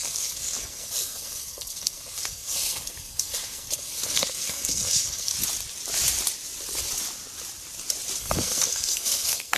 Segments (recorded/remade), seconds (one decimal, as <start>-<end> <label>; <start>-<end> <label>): 0.0-5.3 remade; 5.3-8.2 recorded; 8.2-9.6 remade